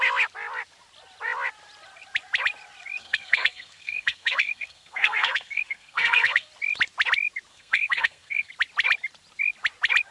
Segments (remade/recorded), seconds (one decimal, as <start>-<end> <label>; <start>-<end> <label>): 0.0-3.0 recorded; 3.0-6.5 remade; 6.5-7.5 recorded; 7.5-8.5 remade; 8.5-10.1 recorded